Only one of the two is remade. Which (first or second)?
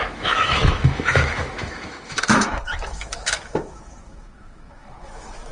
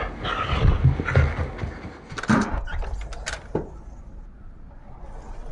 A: first